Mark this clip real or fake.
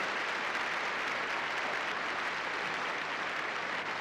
real